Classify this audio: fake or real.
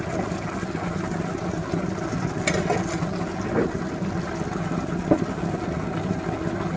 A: real